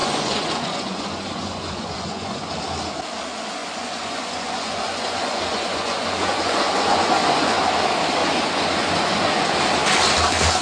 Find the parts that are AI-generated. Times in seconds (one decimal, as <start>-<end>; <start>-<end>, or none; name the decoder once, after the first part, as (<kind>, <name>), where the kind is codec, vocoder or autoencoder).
0.0-2.5 (vocoder, Vocos); 3.6-7.6; 8.2-9.6